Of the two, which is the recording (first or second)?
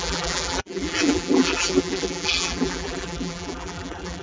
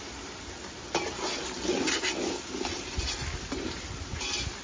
second